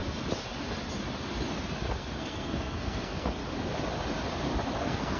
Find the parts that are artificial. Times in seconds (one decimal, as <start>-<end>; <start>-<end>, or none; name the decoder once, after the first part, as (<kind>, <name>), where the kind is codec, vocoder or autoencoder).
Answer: 1.9-3.4 (codec, SNAC); 4.8-5.2